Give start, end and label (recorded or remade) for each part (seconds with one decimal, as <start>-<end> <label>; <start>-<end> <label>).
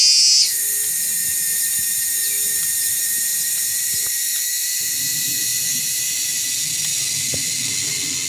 0.0-8.3 recorded